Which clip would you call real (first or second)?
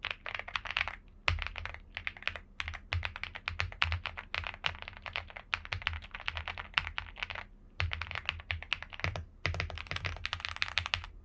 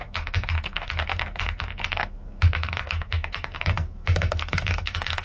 first